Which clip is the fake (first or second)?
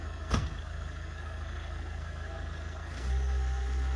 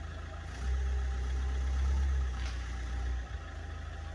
first